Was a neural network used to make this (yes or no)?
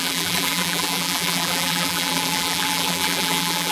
yes